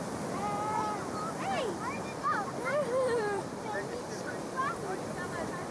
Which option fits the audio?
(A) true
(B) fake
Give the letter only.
B